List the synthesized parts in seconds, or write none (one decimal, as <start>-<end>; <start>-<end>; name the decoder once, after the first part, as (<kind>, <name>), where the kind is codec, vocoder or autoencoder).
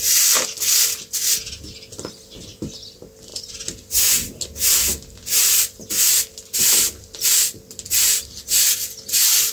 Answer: none